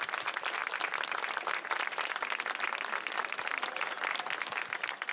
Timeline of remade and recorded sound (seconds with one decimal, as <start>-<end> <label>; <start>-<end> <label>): 0.0-5.1 recorded